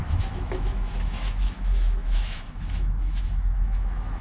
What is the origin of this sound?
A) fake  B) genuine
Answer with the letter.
A